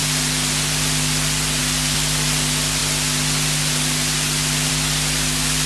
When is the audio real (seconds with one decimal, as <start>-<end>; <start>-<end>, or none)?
0.0-5.7